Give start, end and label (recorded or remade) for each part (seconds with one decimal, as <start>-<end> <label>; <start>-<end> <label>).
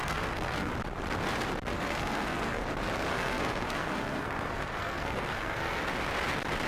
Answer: 0.0-0.7 remade; 0.7-1.7 recorded; 1.7-2.6 remade; 2.6-3.1 recorded; 3.1-5.8 remade; 5.8-6.7 recorded